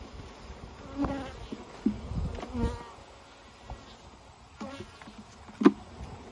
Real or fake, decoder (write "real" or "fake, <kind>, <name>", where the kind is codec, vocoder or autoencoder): real